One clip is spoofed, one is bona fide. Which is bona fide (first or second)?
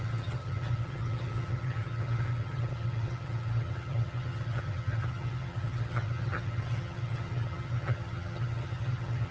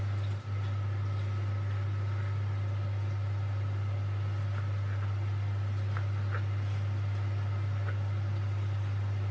second